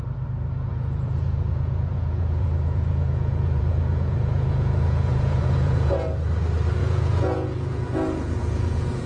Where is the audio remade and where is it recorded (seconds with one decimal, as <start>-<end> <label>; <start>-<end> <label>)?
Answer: 0.0-0.7 recorded; 0.7-5.9 remade; 5.9-6.8 recorded; 6.8-9.1 remade